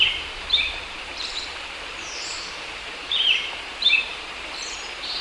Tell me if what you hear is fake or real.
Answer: fake